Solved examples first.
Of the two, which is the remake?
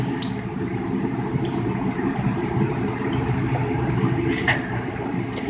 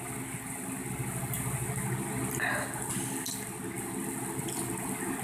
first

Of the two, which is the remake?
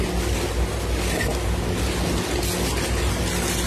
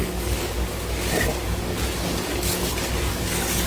second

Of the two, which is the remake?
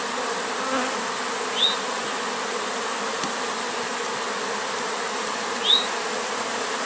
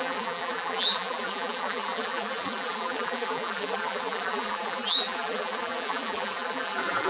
second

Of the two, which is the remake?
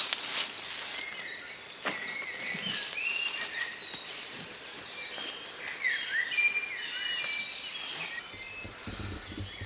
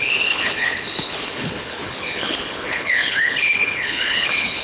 second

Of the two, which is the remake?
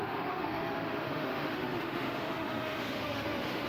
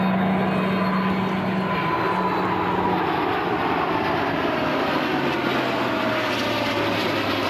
first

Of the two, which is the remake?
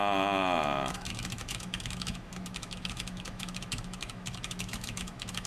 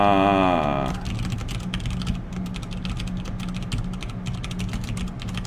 first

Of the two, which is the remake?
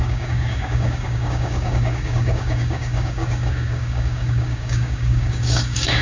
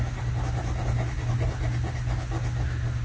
first